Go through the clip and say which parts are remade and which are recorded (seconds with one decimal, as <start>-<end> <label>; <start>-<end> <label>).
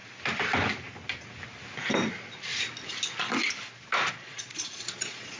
0.0-2.1 recorded; 2.1-2.5 remade; 2.5-4.1 recorded; 4.1-5.4 remade